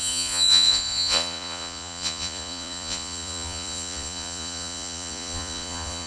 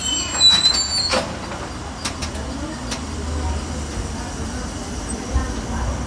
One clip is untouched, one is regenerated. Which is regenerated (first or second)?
first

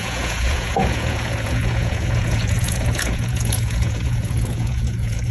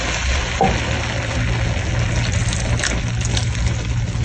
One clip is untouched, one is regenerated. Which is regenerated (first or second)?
first